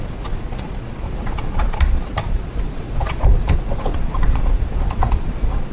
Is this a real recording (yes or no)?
no